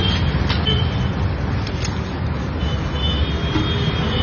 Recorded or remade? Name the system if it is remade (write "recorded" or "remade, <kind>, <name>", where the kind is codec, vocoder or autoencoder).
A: recorded